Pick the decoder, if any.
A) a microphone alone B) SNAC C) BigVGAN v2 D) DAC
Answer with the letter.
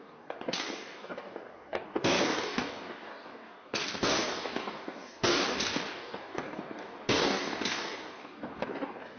D